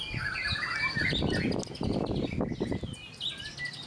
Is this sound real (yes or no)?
yes